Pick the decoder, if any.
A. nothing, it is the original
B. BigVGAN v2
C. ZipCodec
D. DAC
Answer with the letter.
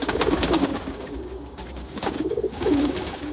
D